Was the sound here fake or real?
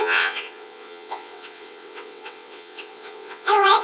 fake